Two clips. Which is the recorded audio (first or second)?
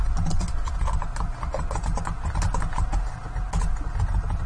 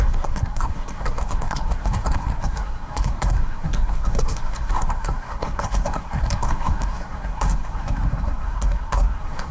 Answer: first